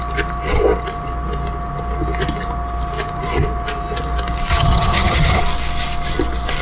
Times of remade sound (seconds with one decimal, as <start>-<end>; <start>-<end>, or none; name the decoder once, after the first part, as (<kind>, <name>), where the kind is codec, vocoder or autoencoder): 4.5-5.4 (vocoder, HiFi-GAN)